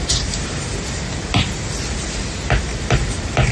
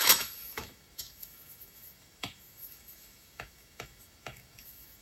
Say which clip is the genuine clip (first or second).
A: first